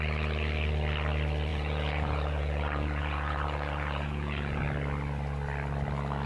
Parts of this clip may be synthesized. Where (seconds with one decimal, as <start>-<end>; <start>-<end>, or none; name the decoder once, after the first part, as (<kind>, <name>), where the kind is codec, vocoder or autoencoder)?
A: 1.5-4.6 (vocoder, Vocos)